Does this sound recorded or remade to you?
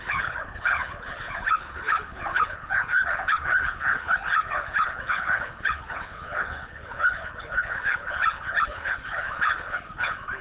remade